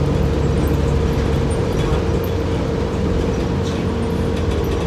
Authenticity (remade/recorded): recorded